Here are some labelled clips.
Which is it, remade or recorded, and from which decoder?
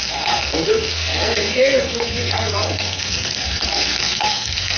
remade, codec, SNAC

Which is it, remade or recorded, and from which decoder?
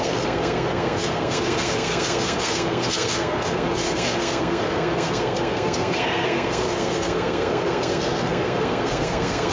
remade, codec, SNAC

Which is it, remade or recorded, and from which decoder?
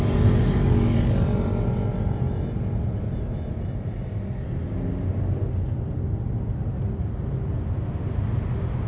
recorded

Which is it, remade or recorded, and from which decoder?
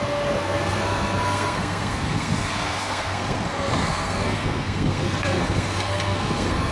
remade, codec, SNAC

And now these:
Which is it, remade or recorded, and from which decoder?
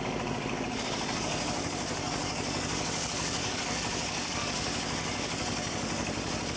remade, codec, DAC